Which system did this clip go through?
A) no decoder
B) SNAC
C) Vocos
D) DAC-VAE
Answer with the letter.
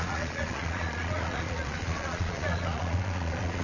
C